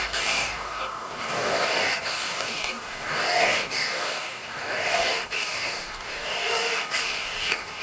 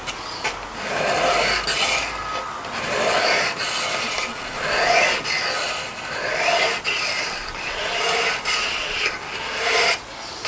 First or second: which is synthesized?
first